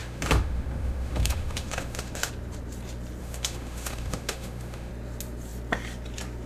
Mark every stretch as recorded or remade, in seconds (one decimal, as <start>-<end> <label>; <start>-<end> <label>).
0.0-2.3 remade; 2.3-3.2 recorded; 3.2-4.9 remade; 4.9-6.5 recorded